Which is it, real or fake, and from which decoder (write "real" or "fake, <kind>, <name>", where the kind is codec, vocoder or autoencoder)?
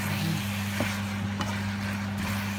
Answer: real